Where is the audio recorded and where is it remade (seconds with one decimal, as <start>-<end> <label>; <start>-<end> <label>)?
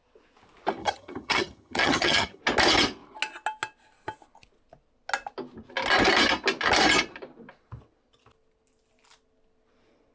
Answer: 0.0-0.8 recorded; 0.8-2.4 remade; 2.4-10.1 recorded